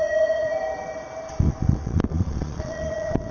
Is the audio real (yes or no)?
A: no